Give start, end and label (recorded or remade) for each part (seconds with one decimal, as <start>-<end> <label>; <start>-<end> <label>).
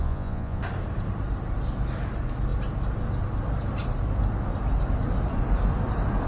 0.0-0.6 remade; 0.6-6.3 recorded